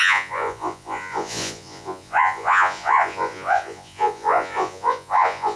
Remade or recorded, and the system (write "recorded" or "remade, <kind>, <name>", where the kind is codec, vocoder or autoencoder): remade, vocoder, Vocos